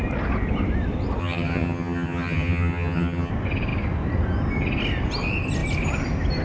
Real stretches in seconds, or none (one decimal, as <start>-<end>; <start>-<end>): 0.0-1.2; 3.3-6.4